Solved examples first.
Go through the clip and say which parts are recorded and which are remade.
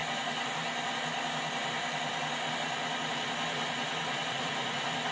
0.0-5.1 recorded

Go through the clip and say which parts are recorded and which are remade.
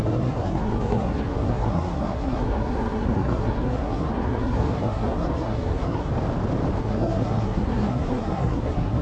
0.0-6.1 remade; 6.1-6.8 recorded; 6.8-9.0 remade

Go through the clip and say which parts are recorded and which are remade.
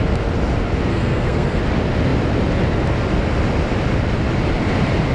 0.0-0.9 recorded; 0.9-1.6 remade; 1.6-5.1 recorded